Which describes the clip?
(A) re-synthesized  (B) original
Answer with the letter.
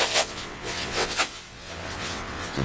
A